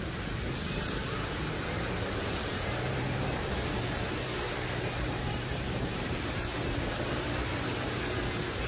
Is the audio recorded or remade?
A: remade